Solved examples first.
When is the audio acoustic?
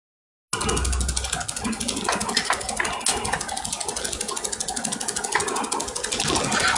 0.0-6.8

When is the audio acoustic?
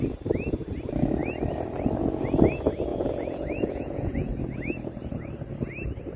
0.0-2.9; 4.3-6.2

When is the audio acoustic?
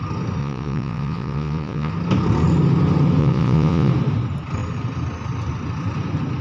0.0-0.4; 1.9-3.2; 3.9-6.4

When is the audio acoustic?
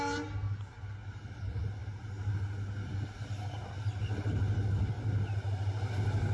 0.0-6.3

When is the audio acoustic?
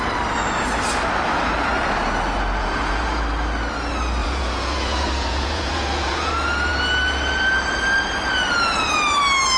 0.0-2.6; 3.2-4.2; 6.3-9.6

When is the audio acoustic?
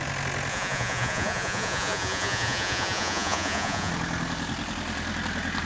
0.0-0.5; 3.9-5.7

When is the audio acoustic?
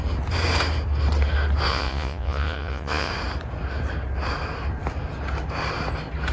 0.0-1.7; 3.1-6.3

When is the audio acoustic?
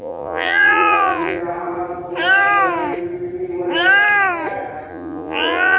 1.4-4.9